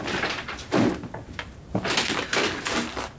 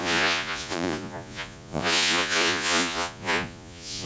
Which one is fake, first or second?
second